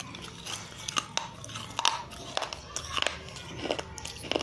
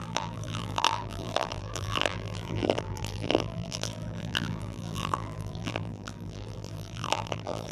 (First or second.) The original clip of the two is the first